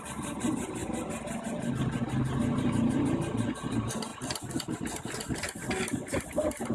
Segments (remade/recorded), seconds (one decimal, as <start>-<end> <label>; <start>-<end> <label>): 0.0-6.7 recorded